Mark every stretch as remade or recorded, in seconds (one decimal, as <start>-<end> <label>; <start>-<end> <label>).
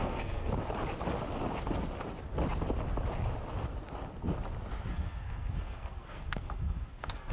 0.0-0.5 remade; 0.5-4.9 recorded; 4.9-7.3 remade